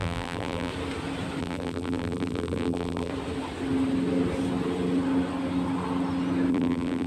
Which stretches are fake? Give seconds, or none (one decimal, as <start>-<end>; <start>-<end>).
0.0-0.7; 1.4-3.1; 6.5-7.1